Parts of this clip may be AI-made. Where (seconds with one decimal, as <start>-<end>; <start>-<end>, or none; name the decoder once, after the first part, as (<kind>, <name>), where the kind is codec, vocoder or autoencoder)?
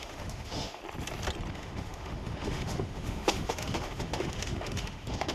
0.0-0.8 (autoencoder, DAC-VAE); 1.5-5.3